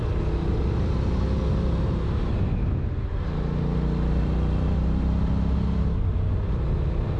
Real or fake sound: real